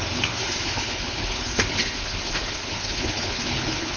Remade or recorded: remade